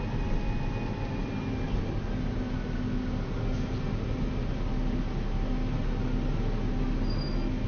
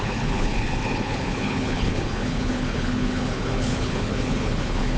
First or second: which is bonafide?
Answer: first